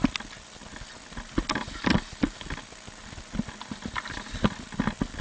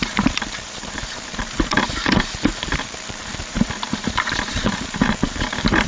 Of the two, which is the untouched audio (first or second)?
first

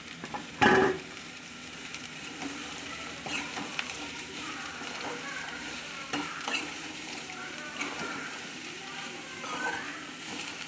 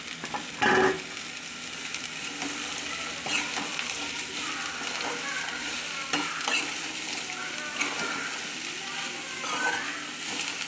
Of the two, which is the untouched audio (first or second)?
second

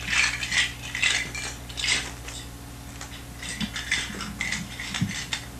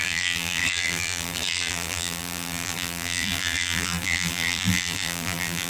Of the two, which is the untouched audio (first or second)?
first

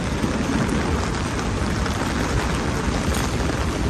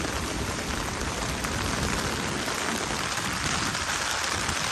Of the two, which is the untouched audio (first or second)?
first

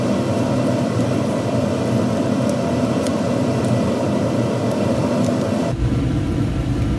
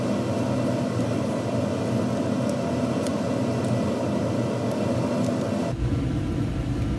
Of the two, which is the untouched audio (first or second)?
second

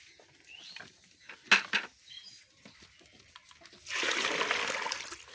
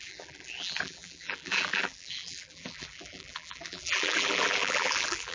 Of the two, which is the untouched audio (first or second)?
first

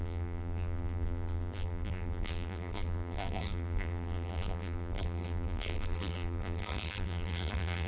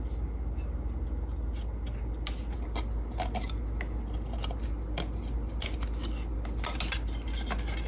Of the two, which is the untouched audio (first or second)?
second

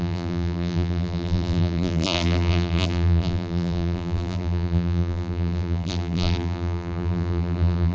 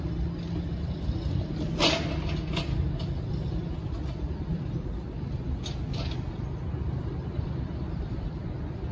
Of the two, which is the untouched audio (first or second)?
second